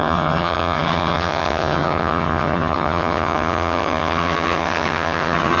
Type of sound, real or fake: fake